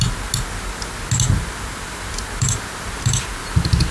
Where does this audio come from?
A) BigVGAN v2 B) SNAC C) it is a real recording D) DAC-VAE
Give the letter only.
C